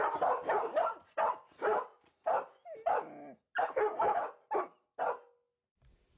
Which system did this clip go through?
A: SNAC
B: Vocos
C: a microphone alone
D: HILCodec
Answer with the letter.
C